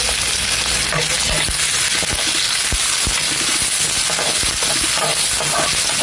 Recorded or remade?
recorded